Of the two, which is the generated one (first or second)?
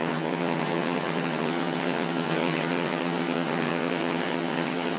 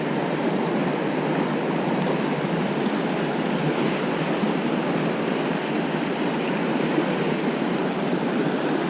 first